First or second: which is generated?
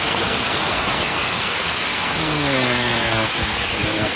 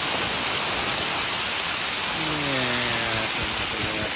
first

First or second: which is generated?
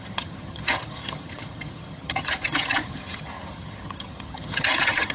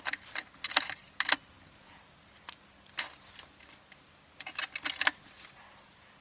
first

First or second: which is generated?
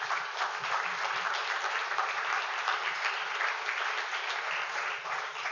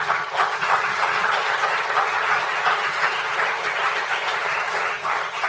second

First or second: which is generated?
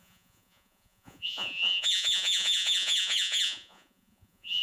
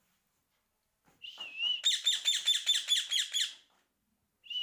first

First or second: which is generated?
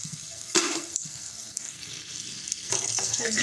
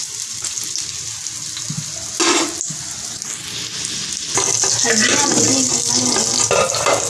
first